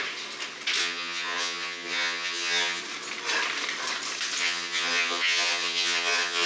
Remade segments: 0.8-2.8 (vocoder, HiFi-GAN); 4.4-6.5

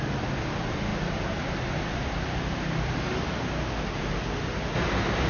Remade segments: none

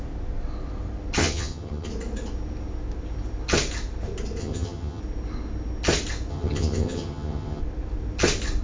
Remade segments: 1.2-1.9 (vocoder, HiFi-GAN); 4.4-5.0; 6.3-7.6

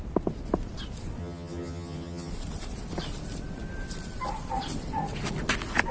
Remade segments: 1.2-2.3 (vocoder, HiFi-GAN)